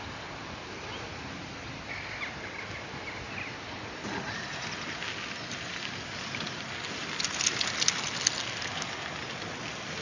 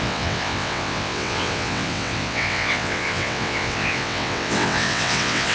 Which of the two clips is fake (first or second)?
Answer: second